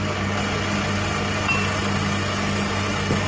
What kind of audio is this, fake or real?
real